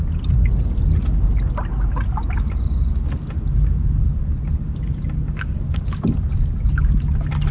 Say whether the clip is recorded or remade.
recorded